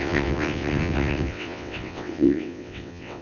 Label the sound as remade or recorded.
remade